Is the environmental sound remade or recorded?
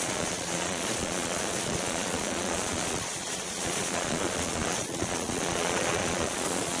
remade